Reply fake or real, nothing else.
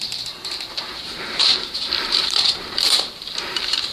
fake